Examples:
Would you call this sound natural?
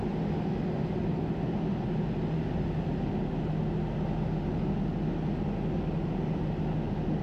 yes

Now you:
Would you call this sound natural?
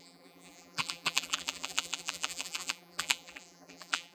no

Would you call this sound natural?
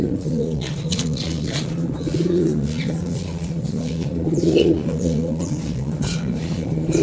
no